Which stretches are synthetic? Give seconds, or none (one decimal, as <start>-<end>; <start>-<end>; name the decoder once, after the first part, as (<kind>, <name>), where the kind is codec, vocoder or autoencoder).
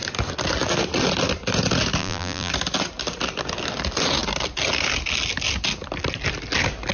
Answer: 2.0-2.5 (vocoder, BigVGAN v2)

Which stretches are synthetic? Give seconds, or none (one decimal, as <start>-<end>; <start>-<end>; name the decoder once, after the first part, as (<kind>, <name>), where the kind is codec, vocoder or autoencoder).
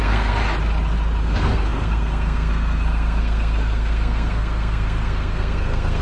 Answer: 0.0-0.4 (codec, SNAC); 1.2-6.0